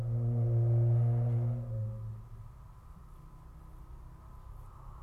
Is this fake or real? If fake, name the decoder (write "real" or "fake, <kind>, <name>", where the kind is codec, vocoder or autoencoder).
real